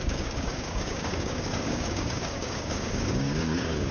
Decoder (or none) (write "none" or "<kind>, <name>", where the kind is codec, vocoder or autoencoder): codec, DAC